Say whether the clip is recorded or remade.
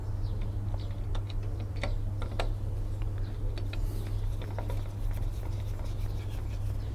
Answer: recorded